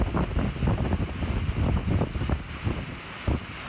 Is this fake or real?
real